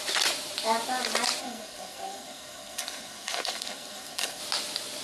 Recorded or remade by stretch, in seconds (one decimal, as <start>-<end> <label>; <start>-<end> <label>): 0.0-1.4 recorded; 1.4-4.4 remade; 4.4-5.0 recorded